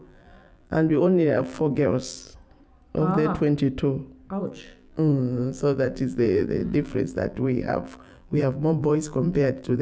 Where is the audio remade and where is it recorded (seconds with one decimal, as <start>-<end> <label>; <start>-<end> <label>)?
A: 0.0-2.3 remade; 2.3-4.4 recorded; 4.4-9.8 remade